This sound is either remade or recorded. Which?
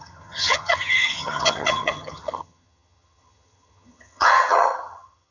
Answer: remade